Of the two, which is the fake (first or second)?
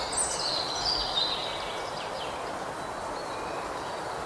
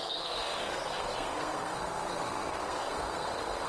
second